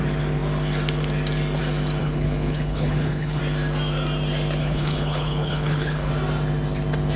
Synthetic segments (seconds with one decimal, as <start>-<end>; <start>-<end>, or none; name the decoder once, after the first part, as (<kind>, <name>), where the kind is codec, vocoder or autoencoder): 2.0-3.4 (codec, HILCodec); 4.6-6.1